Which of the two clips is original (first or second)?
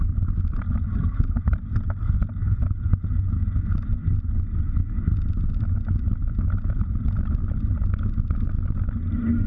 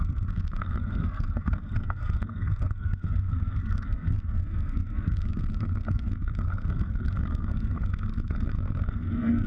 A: first